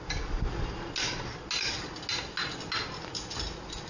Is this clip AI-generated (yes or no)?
no